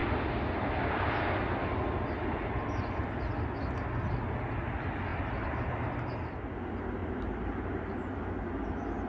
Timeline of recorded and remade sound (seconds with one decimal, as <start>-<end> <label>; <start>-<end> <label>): 0.0-5.1 recorded; 5.1-5.9 remade; 5.9-7.0 recorded; 7.0-7.6 remade; 7.6-9.1 recorded

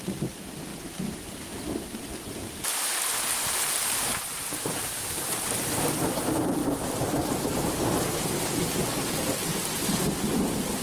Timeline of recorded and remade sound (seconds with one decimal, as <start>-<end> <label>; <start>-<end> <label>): 0.0-0.7 recorded; 0.7-1.4 remade; 1.4-3.4 recorded; 3.4-5.9 remade; 5.9-6.6 recorded; 6.6-7.7 remade; 7.7-10.8 recorded

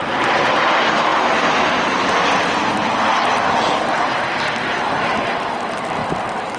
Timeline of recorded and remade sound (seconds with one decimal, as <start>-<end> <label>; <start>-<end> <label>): 0.0-6.6 recorded